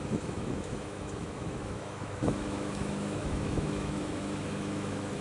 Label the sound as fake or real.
fake